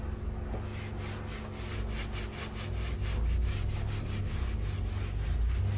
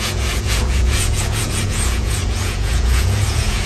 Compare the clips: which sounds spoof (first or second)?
second